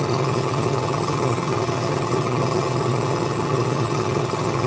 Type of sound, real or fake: fake